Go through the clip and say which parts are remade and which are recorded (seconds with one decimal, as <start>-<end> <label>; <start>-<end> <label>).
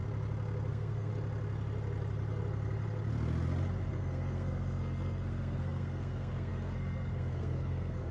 0.0-0.7 recorded; 0.7-1.1 remade; 1.1-3.9 recorded; 3.9-8.1 remade